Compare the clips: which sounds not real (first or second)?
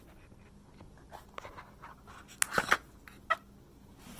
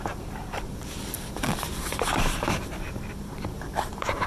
second